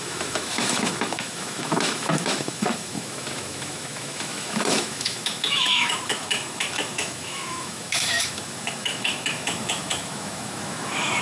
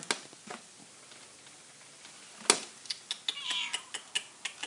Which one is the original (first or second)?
second